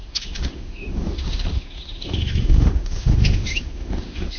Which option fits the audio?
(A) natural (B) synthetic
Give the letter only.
B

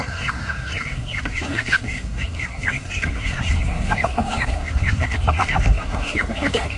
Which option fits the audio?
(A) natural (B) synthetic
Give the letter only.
B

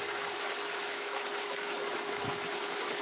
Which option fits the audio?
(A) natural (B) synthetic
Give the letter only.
B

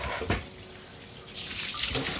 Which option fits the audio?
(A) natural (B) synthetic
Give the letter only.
A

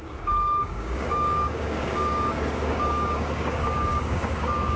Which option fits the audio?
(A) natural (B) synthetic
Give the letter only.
B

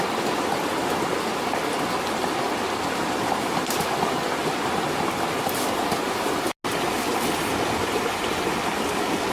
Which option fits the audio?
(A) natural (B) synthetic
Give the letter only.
A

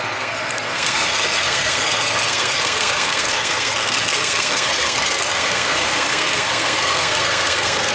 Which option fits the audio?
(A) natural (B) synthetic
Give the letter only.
B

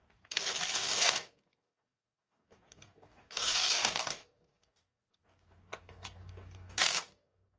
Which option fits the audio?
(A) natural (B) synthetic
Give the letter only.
B